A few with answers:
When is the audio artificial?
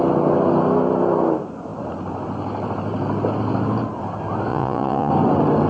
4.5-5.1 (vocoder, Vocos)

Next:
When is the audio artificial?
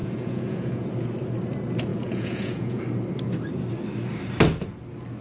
0.0-0.9 (vocoder, Vocos); 1.9-2.8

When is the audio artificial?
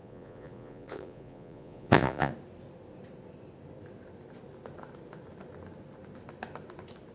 0.0-2.3 (vocoder, Vocos)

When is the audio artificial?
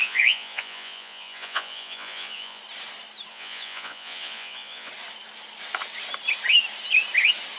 0.0-2.6 (vocoder, Vocos); 3.3-4.9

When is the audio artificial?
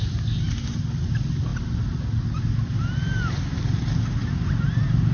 none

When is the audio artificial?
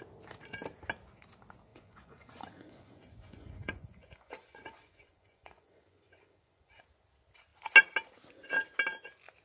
1.7-6.8 (vocoder, Vocos)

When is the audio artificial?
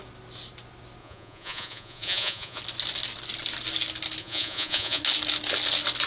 1.0-2.6 (vocoder, Vocos); 4.2-5.0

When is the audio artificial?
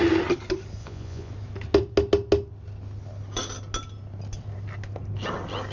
0.8-1.3 (vocoder, Vocos)